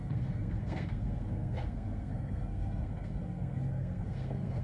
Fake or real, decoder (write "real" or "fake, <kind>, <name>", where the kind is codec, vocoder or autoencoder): fake, codec, SNAC